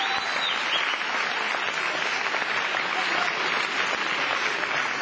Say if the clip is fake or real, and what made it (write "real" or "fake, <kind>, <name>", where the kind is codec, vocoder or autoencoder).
real